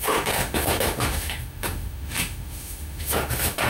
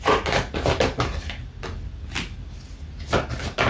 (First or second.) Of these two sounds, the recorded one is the second